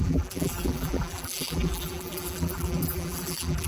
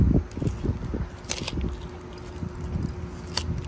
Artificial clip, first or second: first